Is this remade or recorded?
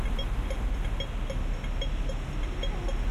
recorded